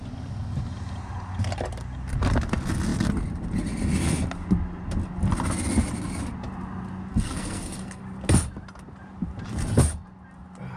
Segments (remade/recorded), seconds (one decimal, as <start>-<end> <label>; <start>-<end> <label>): 0.0-7.1 recorded; 7.1-8.0 remade; 8.0-10.8 recorded